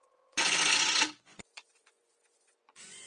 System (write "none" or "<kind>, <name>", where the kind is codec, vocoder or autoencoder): vocoder, Vocos